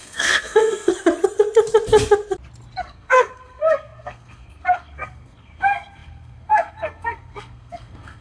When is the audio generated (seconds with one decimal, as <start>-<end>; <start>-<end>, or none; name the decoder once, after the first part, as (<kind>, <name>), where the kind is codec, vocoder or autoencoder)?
0.0-0.9 (codec, SNAC); 2.8-8.2